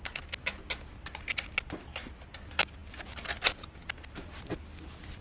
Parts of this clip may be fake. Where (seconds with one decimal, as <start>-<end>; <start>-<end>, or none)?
none